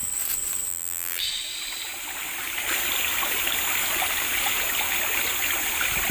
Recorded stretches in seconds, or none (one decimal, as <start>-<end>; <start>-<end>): 0.0-0.7; 1.2-6.1